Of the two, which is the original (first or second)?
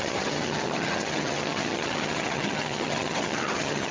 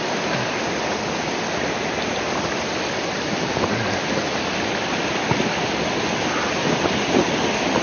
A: second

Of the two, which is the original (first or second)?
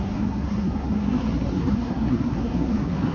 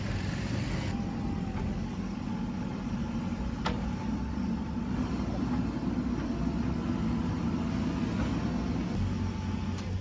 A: second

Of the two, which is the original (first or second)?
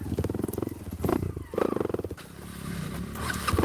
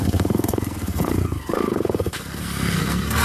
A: first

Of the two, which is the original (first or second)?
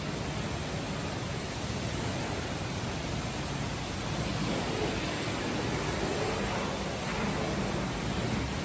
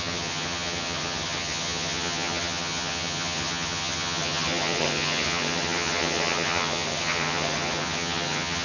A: first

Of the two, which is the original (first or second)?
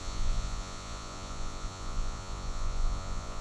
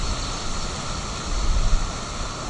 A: second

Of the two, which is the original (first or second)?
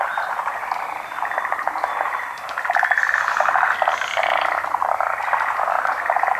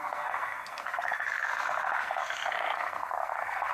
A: first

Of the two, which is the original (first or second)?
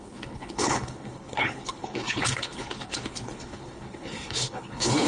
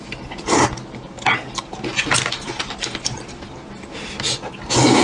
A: second